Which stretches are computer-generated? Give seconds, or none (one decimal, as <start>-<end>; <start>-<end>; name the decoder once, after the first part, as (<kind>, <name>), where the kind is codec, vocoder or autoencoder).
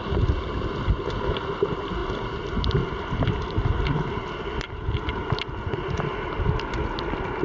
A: none